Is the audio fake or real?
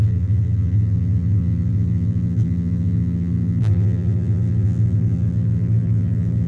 fake